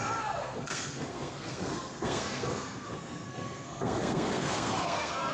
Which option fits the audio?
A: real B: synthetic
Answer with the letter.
B